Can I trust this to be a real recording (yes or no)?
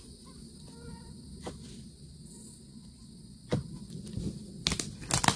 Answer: yes